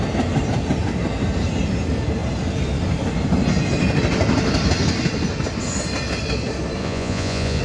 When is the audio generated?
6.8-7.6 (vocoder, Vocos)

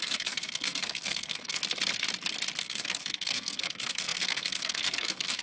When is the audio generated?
0.0-1.6 (codec, SNAC); 2.6-5.4